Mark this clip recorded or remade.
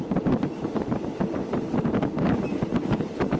remade